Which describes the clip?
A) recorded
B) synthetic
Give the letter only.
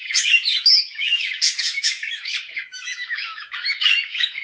B